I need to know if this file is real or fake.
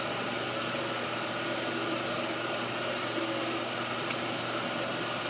real